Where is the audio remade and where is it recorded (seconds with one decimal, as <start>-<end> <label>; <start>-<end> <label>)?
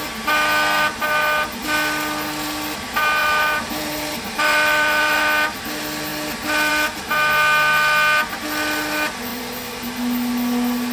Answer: 0.0-3.2 recorded; 3.2-5.2 remade; 5.2-9.3 recorded; 9.3-9.8 remade; 9.8-10.9 recorded